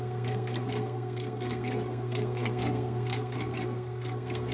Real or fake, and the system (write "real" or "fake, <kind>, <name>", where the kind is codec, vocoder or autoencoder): fake, codec, SNAC